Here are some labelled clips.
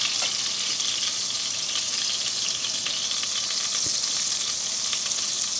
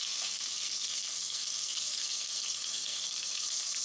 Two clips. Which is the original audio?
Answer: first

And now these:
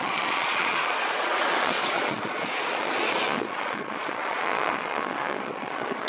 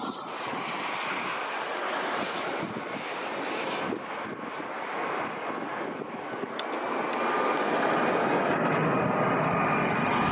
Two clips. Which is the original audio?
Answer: second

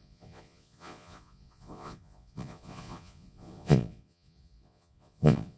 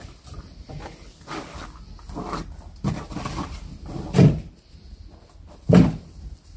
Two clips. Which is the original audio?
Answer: second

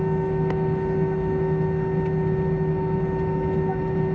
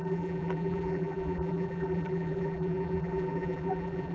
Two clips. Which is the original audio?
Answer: first